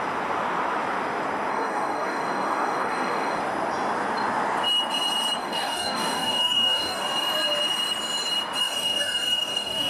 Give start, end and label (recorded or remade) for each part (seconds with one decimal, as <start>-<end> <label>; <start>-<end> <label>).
0.0-1.5 recorded; 1.5-3.4 remade; 3.4-5.4 recorded; 5.4-7.0 remade; 7.0-8.6 recorded; 8.6-9.9 remade